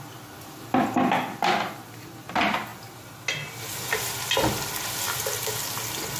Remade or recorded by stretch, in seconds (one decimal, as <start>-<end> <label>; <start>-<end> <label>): 0.0-6.2 recorded